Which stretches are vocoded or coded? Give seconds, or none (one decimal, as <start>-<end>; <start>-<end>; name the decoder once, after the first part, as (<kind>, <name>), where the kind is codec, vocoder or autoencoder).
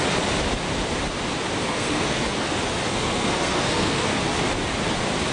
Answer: 1.6-2.2 (codec, SNAC); 2.9-4.2